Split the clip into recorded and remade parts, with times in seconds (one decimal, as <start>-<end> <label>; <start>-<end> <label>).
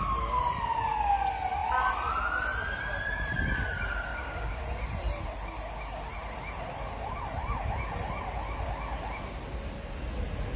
0.0-4.1 recorded; 4.1-4.6 remade; 4.6-10.6 recorded